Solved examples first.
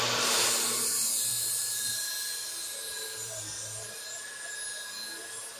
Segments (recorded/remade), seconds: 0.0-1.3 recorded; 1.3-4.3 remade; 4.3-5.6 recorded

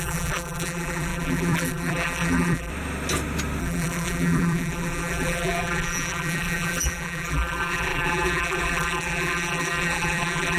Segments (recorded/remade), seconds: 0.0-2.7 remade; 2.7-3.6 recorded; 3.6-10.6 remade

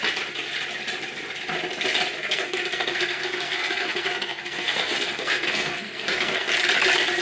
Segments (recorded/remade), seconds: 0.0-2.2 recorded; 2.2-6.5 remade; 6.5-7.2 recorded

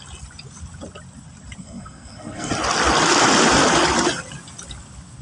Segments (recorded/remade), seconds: 0.0-1.6 recorded; 1.6-2.5 remade; 2.5-5.2 recorded

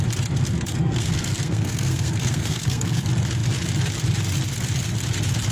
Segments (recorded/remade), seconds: 0.0-0.7 recorded; 0.7-3.0 remade; 3.0-5.5 recorded

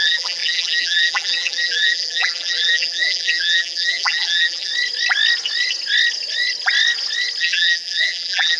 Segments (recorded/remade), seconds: 0.0-4.7 remade; 4.7-7.4 recorded; 7.4-8.6 remade